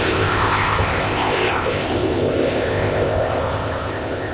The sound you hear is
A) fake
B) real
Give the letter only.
A